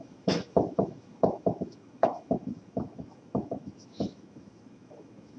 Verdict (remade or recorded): remade